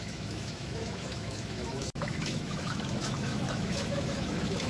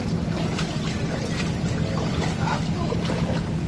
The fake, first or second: first